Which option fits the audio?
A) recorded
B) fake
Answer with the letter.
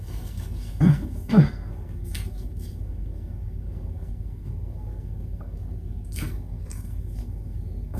B